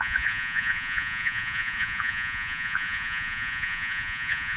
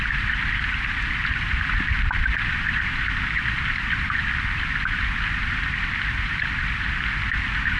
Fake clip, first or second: first